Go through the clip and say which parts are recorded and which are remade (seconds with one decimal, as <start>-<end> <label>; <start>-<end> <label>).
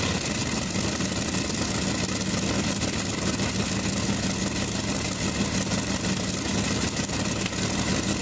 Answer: 0.0-8.2 recorded